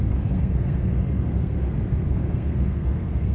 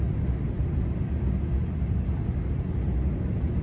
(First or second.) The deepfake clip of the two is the first